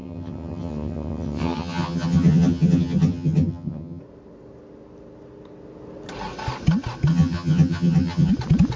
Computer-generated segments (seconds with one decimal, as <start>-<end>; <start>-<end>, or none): 0.0-4.0; 7.1-8.3